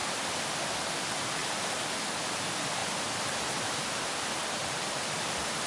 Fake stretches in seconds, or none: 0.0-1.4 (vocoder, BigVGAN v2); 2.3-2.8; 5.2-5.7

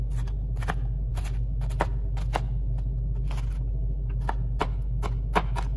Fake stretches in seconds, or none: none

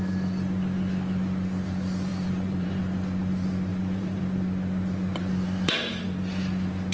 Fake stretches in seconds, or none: 2.1-2.8 (vocoder, BigVGAN v2); 3.7-4.2; 5.1-6.0

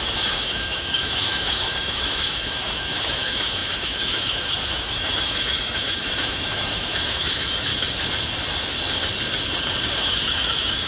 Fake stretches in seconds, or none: 0.0-7.7 (autoencoder, DAC-VAE); 10.0-10.9

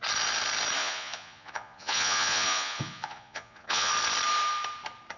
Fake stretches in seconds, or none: 0.8-3.9 (vocoder, Vocos)

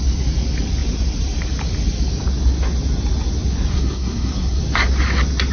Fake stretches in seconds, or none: 3.7-4.6 (codec, SNAC)

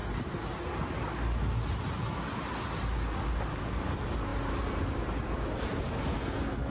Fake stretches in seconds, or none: none